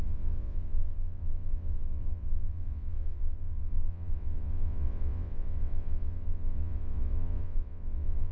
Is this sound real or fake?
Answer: fake